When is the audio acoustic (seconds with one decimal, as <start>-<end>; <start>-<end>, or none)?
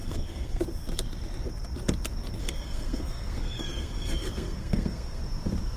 0.6-2.4; 5.2-5.8